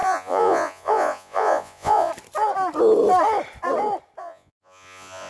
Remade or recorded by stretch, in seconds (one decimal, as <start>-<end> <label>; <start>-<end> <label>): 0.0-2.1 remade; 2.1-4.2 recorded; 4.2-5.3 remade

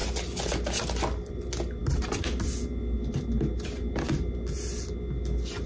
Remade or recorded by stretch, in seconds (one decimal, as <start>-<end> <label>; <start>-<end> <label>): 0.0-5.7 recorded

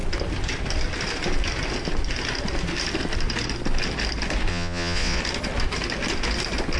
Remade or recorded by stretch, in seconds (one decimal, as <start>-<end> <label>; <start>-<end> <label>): 0.0-4.5 recorded; 4.5-5.2 remade; 5.2-6.8 recorded

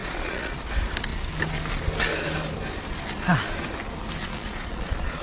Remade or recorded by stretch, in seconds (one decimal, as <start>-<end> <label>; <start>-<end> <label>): 0.0-0.6 remade; 0.6-4.2 recorded; 4.2-5.2 remade

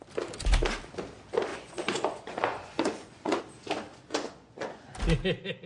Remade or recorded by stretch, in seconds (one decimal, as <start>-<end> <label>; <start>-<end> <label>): 0.0-1.5 recorded; 1.5-3.4 remade; 3.4-3.9 recorded; 3.9-4.9 remade; 4.9-5.7 recorded

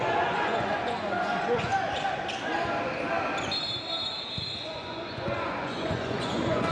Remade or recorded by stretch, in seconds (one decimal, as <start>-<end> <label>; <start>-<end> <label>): 0.0-1.7 remade; 1.7-4.6 recorded; 4.6-6.7 remade

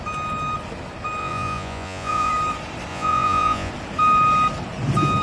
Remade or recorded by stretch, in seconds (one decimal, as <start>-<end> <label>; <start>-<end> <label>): 0.0-1.2 recorded; 1.2-2.3 remade; 2.3-2.9 recorded; 2.9-3.7 remade; 3.7-5.2 recorded